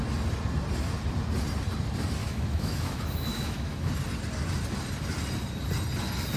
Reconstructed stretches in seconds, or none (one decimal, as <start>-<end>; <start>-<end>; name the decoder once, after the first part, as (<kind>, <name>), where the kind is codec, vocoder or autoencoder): 2.2-3.9 (autoencoder, DAC-VAE)

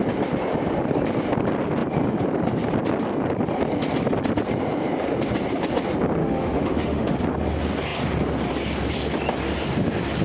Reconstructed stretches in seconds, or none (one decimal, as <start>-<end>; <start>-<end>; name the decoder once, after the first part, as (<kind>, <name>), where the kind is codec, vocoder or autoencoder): 6.2-7.2 (autoencoder, DAC-VAE)